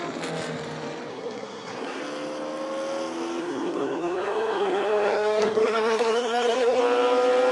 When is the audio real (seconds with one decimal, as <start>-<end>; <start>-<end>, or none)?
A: 0.0-1.1; 2.0-3.4; 6.8-7.5